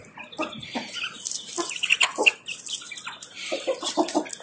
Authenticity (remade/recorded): recorded